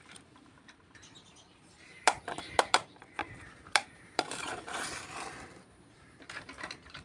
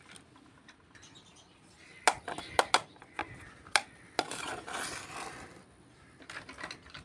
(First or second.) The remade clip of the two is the first